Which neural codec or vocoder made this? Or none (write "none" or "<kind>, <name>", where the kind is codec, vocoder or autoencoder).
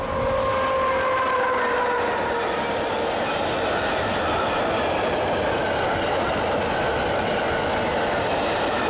none